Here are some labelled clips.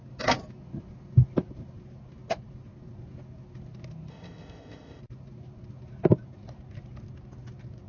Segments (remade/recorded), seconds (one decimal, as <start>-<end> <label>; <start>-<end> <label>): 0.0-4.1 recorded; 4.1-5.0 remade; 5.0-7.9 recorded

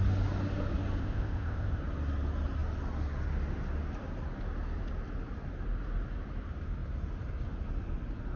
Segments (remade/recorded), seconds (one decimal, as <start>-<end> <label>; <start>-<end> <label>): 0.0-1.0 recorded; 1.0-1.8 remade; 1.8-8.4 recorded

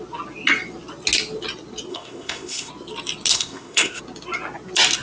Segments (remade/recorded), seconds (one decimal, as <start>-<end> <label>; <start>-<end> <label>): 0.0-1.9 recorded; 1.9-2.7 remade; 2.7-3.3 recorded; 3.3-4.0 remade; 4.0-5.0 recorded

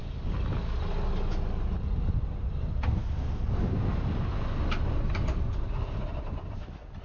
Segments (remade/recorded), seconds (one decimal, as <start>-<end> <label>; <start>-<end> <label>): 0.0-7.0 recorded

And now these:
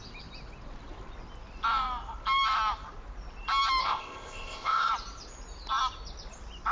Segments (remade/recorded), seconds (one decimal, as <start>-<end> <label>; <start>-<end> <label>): 0.0-3.8 recorded; 3.8-4.9 remade; 4.9-6.7 recorded